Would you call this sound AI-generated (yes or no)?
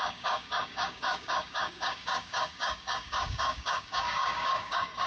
yes